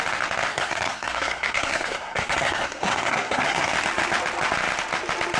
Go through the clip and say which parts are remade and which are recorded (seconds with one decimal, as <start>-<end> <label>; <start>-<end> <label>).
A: 0.0-0.5 recorded; 0.5-3.7 remade; 3.7-5.4 recorded